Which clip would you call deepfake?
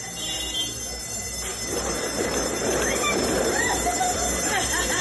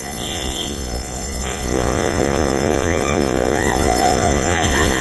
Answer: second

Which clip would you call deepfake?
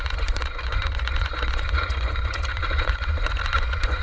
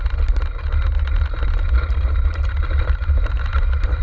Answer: first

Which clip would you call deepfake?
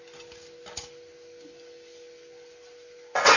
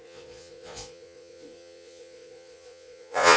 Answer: second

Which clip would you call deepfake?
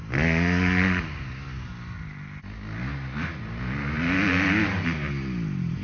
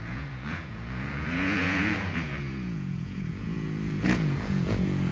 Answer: second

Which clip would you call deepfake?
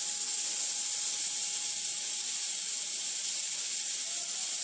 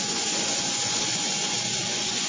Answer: second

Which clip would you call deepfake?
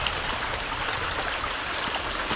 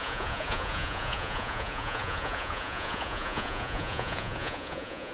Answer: second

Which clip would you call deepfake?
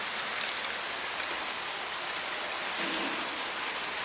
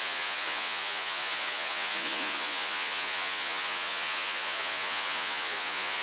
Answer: second